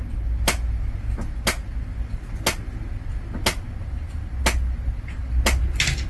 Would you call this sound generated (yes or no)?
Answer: no